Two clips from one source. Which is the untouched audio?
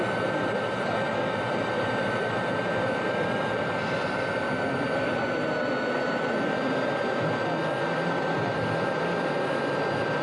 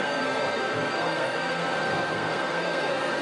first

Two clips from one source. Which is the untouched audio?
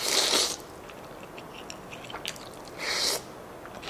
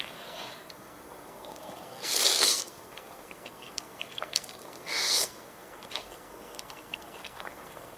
first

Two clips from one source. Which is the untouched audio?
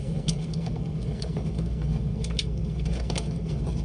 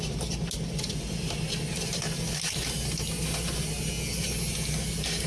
second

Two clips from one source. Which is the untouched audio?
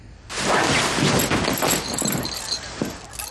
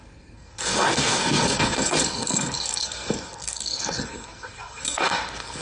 first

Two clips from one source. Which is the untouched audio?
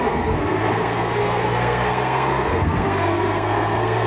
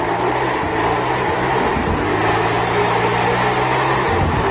second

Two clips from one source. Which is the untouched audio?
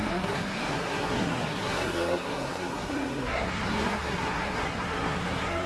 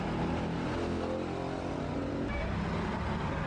second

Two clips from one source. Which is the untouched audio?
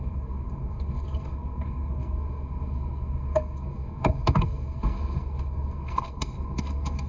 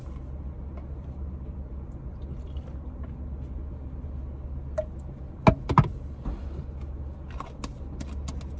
second